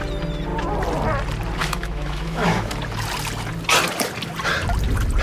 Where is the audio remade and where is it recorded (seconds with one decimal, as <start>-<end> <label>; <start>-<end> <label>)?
0.0-1.6 recorded; 1.6-2.7 remade; 2.7-5.2 recorded